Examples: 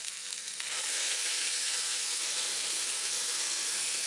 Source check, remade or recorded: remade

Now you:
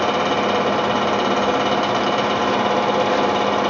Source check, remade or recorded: recorded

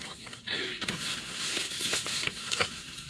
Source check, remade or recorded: remade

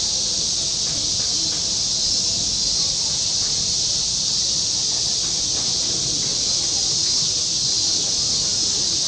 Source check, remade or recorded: recorded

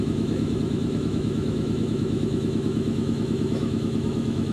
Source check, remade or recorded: remade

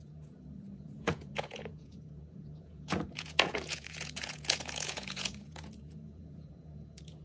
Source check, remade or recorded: remade